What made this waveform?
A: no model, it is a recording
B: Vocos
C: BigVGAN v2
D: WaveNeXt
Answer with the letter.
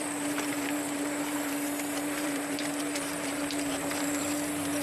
C